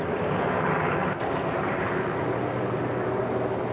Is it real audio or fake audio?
real